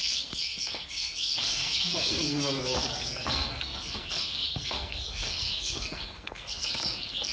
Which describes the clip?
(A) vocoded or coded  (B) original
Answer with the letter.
A